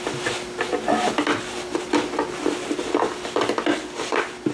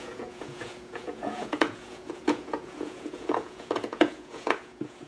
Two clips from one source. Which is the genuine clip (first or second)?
first